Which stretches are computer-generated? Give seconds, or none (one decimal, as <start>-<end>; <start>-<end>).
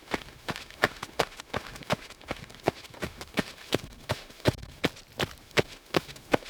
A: 0.0-4.8; 5.4-6.5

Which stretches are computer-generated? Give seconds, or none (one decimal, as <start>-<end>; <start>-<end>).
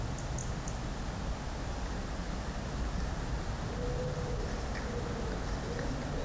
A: none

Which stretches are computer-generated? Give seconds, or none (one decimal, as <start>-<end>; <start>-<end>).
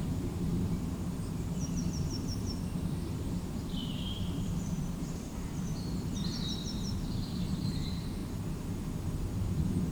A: 0.0-8.2; 9.2-9.9